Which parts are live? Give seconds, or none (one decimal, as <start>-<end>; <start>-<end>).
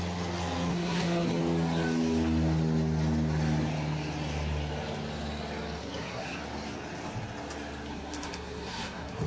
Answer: 0.0-0.7; 1.4-5.8; 6.4-7.9